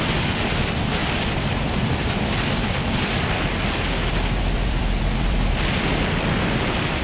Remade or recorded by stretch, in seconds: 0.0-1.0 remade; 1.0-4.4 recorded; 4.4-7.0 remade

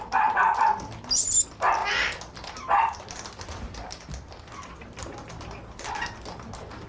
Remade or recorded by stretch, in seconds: 0.0-6.9 recorded

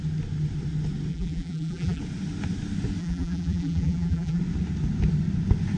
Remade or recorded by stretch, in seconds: 0.0-1.1 recorded; 1.1-2.0 remade; 2.0-3.0 recorded; 3.0-4.4 remade; 4.4-5.8 recorded